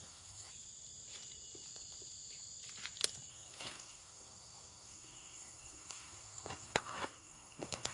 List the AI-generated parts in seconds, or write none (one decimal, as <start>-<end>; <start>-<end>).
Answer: 0.0-0.5; 3.3-7.9